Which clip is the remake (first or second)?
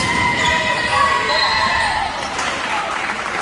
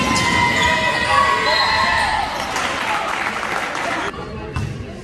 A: first